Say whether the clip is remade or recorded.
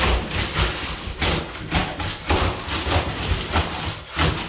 recorded